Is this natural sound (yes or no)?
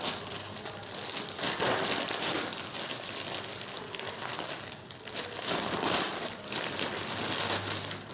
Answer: no